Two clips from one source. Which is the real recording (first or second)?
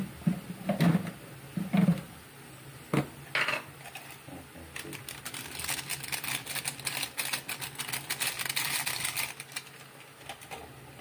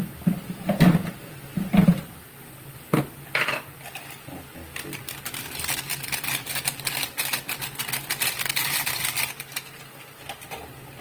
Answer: first